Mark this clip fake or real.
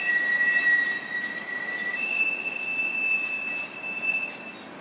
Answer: real